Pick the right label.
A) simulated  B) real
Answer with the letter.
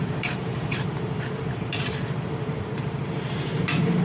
A